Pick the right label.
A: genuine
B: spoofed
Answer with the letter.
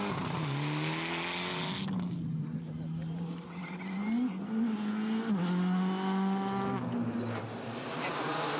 A